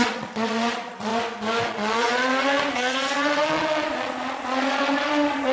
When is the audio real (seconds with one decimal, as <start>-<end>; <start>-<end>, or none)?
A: 1.1-1.7